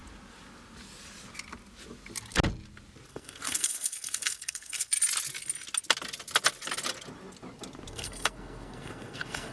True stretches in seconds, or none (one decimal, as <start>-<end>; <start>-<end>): 0.0-3.1; 4.9-7.9